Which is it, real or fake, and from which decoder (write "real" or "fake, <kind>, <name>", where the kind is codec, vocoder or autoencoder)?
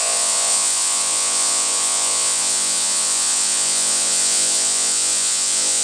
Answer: fake, vocoder, Vocos